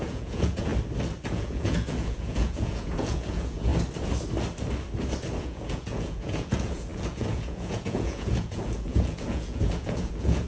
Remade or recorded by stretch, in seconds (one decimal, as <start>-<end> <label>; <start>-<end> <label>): 0.0-0.7 remade; 0.7-1.3 recorded; 1.3-3.7 remade; 3.7-5.4 recorded; 5.4-10.5 remade